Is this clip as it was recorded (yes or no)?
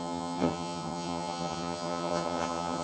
no